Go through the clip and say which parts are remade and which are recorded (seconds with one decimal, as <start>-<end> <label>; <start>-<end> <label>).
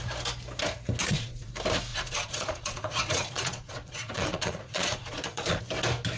0.0-1.0 recorded; 1.0-1.5 remade; 1.5-1.9 recorded; 1.9-5.6 remade; 5.6-6.2 recorded